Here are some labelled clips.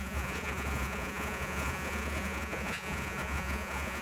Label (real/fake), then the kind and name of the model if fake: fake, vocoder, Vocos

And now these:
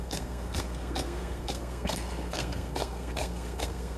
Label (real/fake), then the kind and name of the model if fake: fake, codec, SNAC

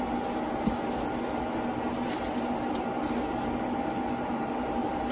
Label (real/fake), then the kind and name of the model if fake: real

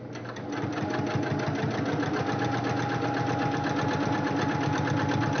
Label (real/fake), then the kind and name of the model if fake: real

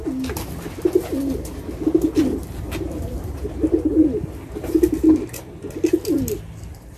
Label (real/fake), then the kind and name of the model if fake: real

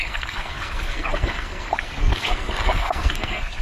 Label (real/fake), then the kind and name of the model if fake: fake, codec, SNAC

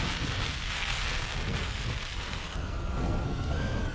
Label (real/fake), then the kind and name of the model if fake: fake, codec, SNAC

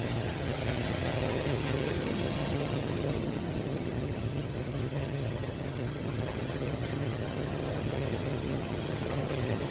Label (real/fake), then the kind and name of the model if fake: fake, vocoder, HiFi-GAN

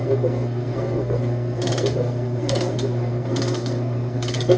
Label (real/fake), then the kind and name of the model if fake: fake, codec, SNAC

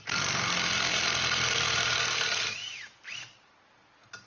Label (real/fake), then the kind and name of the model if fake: real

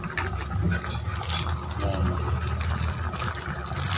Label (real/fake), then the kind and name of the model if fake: real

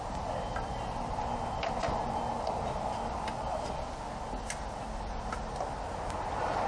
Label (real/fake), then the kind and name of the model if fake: real